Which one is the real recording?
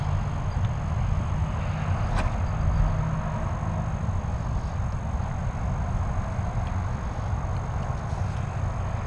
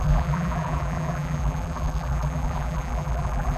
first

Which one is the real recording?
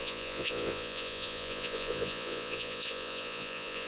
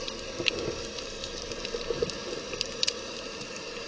second